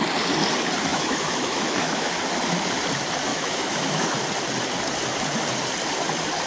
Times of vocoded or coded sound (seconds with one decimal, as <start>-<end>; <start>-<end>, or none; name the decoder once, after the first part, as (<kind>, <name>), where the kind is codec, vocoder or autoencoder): 0.9-2.1 (autoencoder, DAC-VAE); 3.3-4.2